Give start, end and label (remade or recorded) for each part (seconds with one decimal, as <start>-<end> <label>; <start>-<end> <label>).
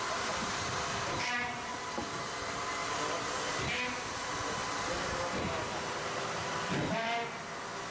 0.0-1.7 remade; 1.7-3.5 recorded; 3.5-4.6 remade; 4.6-7.9 recorded